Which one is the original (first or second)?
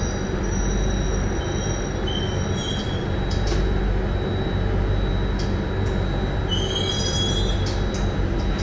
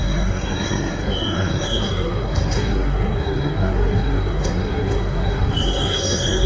first